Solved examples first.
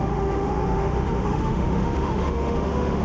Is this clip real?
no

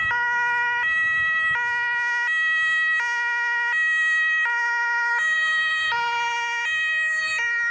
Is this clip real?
yes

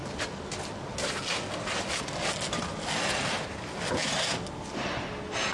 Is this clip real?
yes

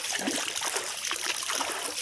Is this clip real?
yes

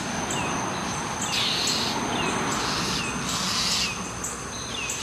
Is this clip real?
yes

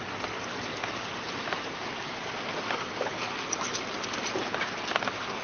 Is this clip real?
yes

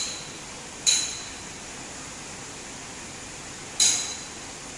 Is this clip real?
yes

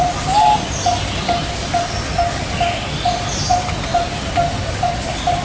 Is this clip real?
yes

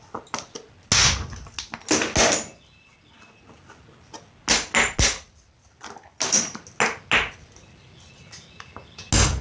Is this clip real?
yes